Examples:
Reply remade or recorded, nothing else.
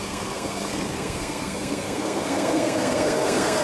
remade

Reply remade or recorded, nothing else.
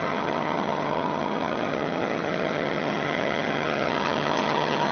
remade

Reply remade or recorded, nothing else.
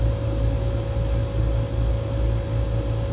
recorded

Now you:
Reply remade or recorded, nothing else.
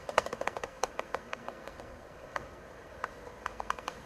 remade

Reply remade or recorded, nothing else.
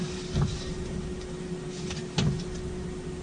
recorded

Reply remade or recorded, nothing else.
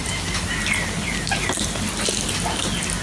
recorded